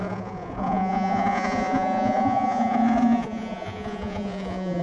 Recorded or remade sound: remade